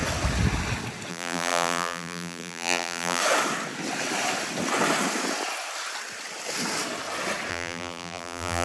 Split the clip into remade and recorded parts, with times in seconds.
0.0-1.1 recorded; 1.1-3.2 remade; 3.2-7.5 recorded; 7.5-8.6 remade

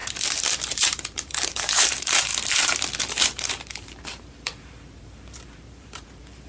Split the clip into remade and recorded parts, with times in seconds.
0.0-0.7 recorded; 0.7-2.3 remade; 2.3-3.0 recorded; 3.0-6.5 remade

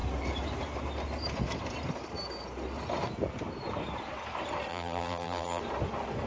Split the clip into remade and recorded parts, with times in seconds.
0.0-4.7 recorded; 4.7-5.6 remade; 5.6-6.3 recorded

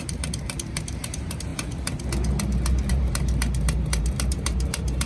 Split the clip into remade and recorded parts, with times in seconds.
0.0-1.5 remade; 1.5-2.9 recorded; 2.9-5.1 remade

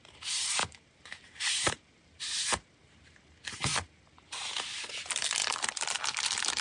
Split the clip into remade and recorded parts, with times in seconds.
0.0-0.6 recorded; 0.6-2.3 remade; 2.3-6.6 recorded

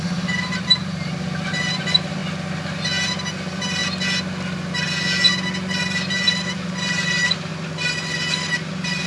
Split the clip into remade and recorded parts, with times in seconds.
0.0-2.2 remade; 2.2-3.3 recorded; 3.3-3.8 remade; 3.8-5.8 recorded; 5.8-7.5 remade; 7.5-8.7 recorded; 8.7-9.1 remade

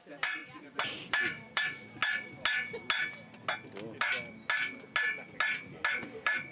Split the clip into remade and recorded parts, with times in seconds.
0.0-2.0 remade; 2.0-5.9 recorded; 5.9-6.5 remade

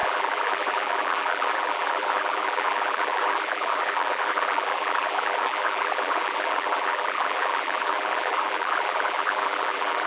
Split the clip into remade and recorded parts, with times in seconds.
0.0-10.1 remade